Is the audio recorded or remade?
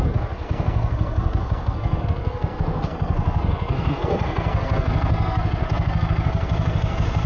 remade